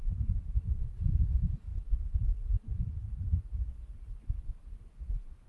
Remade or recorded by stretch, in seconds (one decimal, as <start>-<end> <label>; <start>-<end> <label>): 0.0-5.5 remade